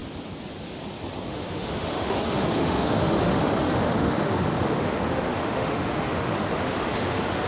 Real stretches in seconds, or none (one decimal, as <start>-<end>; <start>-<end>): 0.0-1.3